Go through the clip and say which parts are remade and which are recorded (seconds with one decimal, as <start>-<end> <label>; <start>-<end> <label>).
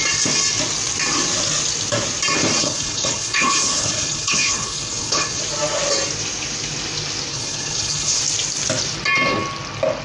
0.0-2.6 recorded; 2.6-5.4 remade; 5.4-7.3 recorded; 7.3-8.2 remade; 8.2-10.0 recorded